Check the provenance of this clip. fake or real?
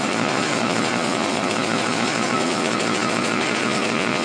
fake